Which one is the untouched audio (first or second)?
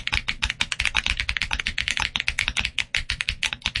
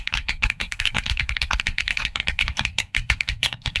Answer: first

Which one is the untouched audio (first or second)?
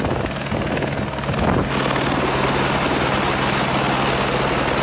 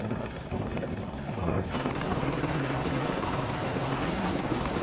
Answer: first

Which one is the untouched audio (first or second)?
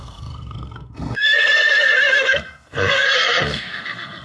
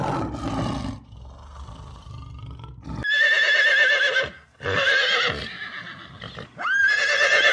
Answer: second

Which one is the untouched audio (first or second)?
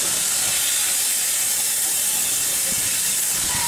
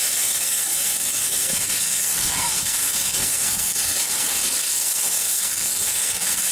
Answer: first